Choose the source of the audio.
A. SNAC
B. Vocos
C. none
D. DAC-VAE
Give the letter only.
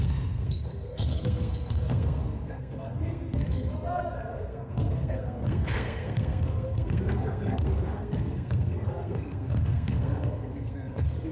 A